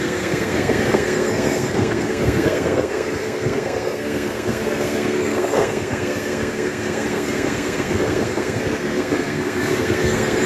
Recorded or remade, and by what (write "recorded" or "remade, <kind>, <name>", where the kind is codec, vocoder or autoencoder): remade, codec, SNAC